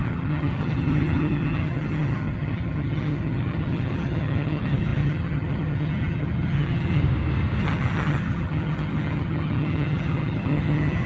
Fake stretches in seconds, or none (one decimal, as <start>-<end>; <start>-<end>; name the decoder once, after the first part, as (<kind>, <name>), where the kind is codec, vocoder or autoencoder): 0.0-7.0 (vocoder, HiFi-GAN); 7.6-11.1